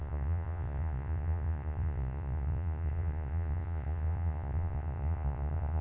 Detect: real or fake fake